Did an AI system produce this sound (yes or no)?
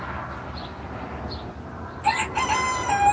no